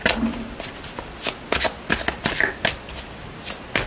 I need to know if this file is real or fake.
real